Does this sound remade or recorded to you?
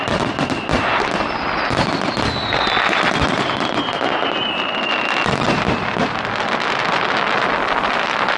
recorded